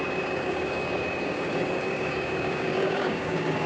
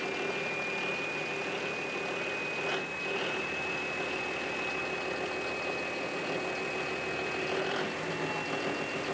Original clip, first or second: second